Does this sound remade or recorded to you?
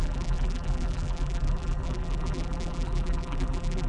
remade